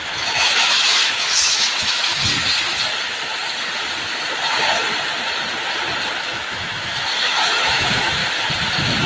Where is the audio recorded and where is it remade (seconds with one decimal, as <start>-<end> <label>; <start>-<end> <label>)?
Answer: 0.0-2.2 remade; 2.2-6.2 recorded; 6.2-8.2 remade; 8.2-9.1 recorded